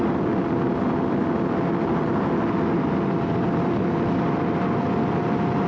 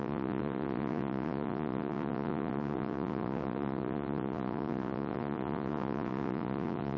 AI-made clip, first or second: second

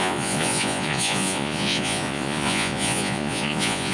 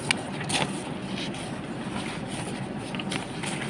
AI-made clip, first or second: first